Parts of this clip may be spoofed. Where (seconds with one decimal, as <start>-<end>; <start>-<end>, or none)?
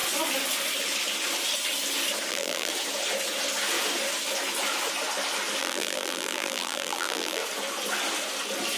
2.3-2.7; 5.6-7.4